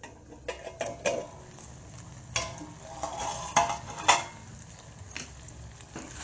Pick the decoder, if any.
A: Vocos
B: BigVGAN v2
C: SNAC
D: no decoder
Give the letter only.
D